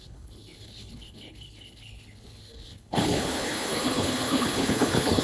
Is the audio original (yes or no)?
no